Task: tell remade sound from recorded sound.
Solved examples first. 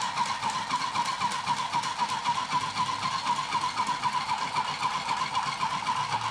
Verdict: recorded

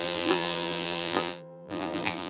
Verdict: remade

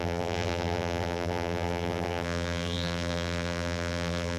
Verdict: remade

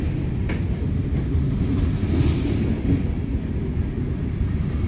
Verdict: recorded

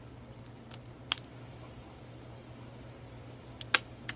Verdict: recorded